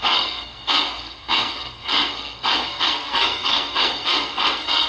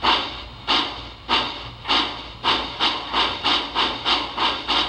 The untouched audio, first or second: second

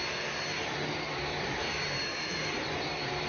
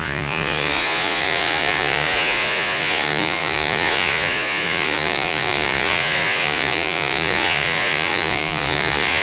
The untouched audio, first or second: first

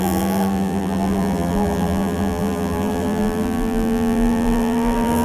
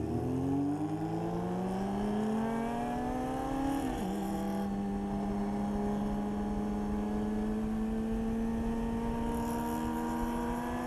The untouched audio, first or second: second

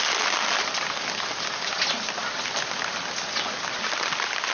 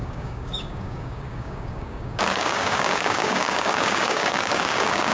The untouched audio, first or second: first